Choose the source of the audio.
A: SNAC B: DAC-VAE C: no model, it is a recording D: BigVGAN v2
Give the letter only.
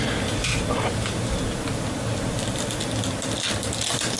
C